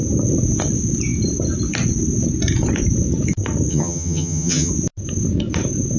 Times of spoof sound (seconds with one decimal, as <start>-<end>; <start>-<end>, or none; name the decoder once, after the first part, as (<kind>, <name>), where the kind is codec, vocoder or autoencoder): 3.7-4.7 (vocoder, HiFi-GAN)

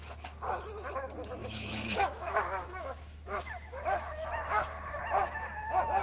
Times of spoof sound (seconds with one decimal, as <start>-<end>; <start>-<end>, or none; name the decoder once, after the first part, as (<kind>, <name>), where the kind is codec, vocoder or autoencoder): 1.4-5.0 (autoencoder, DAC-VAE)

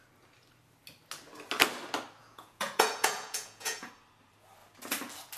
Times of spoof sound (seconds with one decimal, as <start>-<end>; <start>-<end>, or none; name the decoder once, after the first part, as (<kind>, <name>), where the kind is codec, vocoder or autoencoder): 2.2-3.9 (vocoder, Vocos)